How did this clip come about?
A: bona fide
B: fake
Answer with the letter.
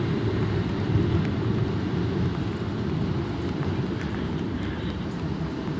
B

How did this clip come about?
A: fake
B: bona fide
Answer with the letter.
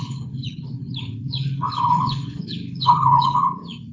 A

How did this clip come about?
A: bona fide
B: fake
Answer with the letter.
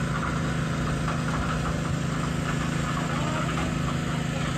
A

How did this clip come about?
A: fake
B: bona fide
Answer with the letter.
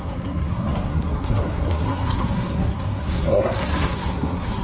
A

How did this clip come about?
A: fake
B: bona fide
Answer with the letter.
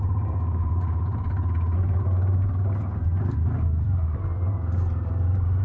A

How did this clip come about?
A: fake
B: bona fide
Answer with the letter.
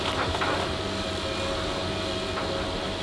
B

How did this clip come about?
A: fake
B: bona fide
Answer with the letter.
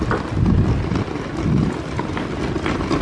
B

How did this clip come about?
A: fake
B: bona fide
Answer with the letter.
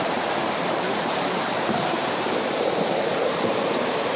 A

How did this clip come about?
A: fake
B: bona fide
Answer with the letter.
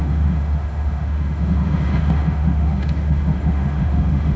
A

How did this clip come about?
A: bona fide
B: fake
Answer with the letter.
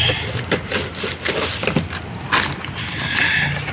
A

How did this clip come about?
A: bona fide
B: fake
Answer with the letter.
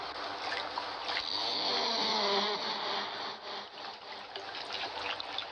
A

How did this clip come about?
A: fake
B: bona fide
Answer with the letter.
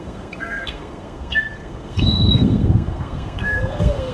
A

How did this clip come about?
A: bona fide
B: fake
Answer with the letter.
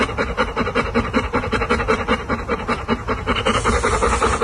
A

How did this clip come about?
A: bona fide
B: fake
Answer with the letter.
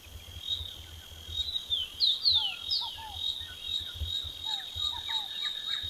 A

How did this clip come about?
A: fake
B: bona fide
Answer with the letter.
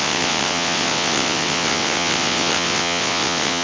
A